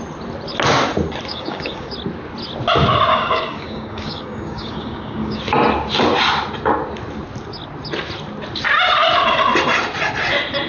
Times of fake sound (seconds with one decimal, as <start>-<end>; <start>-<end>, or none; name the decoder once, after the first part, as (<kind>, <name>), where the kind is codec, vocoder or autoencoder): 1.3-1.9 (codec, DAC); 3.1-5.4